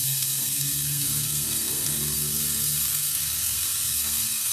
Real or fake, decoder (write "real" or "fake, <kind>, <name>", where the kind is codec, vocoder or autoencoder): fake, codec, SNAC